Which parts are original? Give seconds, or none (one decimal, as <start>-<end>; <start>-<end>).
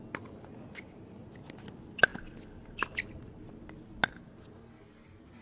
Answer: 0.0-5.4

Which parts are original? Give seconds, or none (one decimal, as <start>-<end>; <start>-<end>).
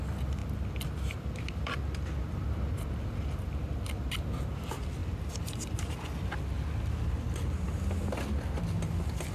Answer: 0.0-9.3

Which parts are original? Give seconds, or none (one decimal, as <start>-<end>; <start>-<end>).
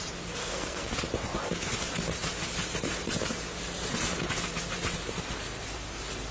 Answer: 0.0-0.4; 0.9-6.3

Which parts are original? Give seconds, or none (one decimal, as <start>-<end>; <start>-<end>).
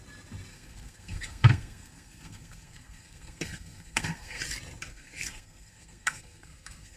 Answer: 0.0-0.5; 4.4-4.9